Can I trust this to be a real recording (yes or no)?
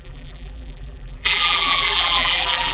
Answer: no